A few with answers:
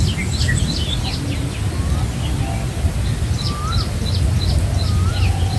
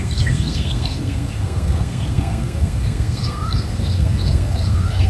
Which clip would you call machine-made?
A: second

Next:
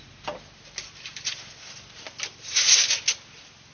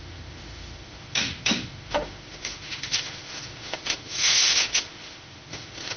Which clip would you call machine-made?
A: second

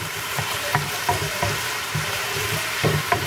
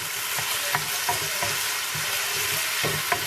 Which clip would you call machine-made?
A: first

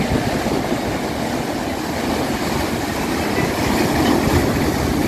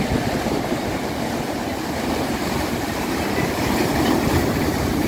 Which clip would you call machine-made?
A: second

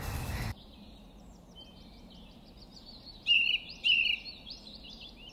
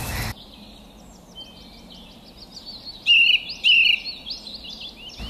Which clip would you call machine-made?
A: first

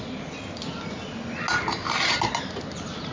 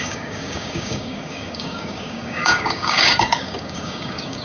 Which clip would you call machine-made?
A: second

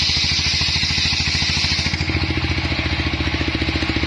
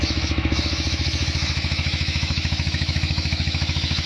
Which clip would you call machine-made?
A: second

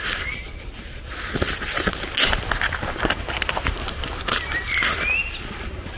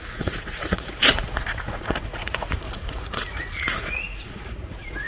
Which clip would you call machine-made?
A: second